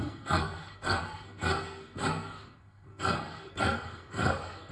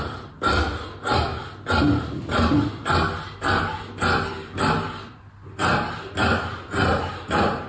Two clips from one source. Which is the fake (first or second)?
first